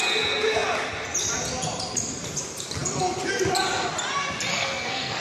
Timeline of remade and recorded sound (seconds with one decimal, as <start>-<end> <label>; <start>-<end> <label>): 0.0-4.5 recorded; 4.5-5.2 remade